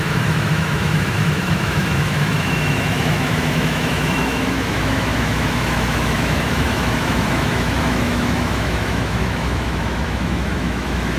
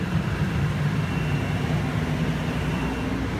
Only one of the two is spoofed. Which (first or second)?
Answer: first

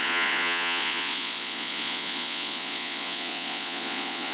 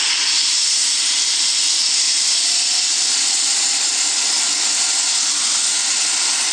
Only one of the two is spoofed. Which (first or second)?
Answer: first